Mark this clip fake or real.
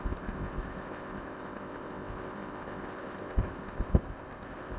fake